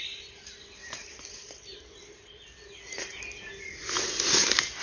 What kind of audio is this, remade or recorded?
recorded